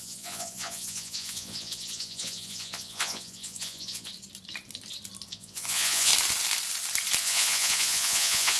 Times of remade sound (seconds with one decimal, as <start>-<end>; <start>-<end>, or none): 0.0-4.1; 5.3-6.1; 7.2-8.6